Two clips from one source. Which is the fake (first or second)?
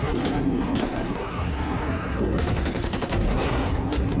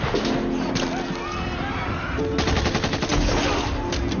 first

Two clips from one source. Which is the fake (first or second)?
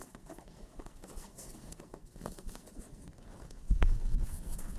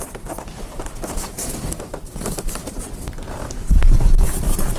first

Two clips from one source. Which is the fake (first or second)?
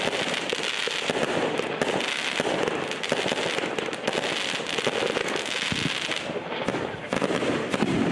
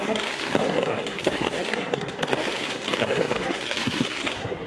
second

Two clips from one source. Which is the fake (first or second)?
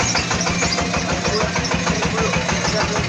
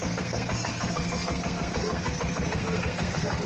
second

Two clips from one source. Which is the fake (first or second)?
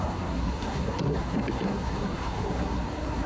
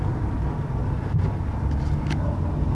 first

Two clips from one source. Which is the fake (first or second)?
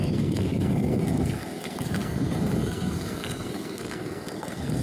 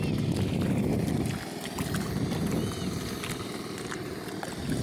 first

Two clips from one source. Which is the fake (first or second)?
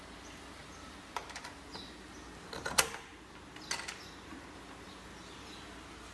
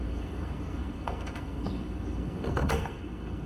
second